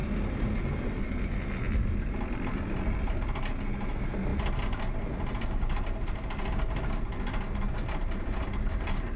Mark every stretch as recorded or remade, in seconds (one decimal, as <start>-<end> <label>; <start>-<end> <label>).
0.0-9.2 recorded